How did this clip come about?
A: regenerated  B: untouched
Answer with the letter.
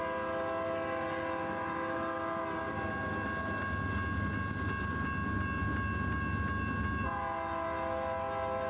B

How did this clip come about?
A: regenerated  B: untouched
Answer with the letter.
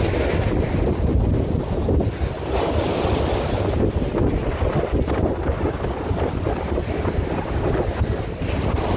B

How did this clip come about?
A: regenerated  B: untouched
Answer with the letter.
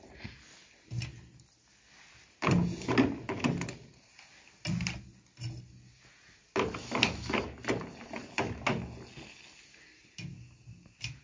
B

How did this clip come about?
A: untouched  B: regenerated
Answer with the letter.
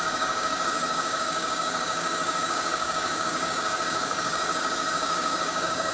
B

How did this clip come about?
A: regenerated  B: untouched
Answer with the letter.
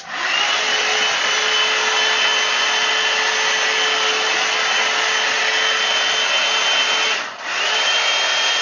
B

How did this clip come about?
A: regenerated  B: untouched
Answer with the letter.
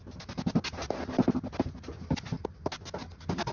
B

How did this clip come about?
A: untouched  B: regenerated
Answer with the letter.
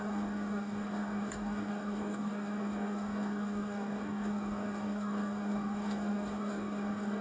B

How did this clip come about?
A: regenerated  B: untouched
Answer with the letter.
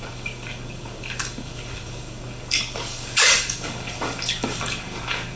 A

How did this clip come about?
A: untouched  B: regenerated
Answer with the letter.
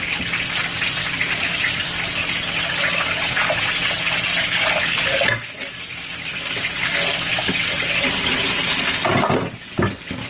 A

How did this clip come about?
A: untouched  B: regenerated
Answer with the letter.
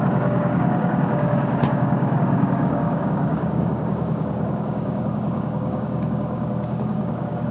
B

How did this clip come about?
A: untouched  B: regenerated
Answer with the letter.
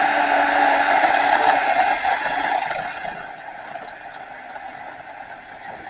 A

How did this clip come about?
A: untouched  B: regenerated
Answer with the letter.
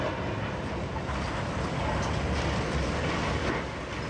A